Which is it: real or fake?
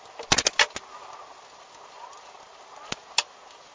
real